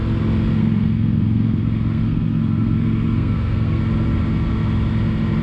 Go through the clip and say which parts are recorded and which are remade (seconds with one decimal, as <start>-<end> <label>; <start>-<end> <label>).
0.0-0.6 recorded; 0.6-3.8 remade; 3.8-5.4 recorded

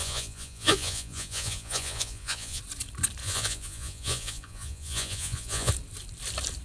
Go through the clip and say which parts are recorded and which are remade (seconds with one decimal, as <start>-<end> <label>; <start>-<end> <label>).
0.0-2.6 remade; 2.6-3.2 recorded; 3.2-5.7 remade; 5.7-6.6 recorded

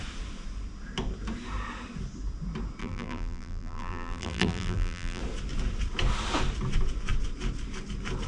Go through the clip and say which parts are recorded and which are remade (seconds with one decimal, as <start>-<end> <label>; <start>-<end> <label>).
0.0-2.8 recorded; 2.8-5.2 remade; 5.2-8.3 recorded

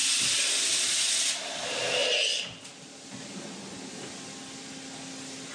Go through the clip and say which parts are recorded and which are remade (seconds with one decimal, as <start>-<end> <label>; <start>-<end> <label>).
0.0-5.5 recorded